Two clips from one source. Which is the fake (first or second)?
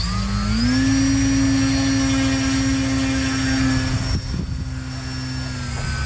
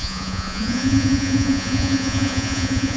second